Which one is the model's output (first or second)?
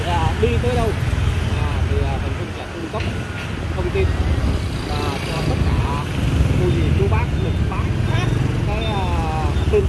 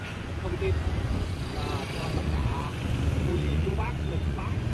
second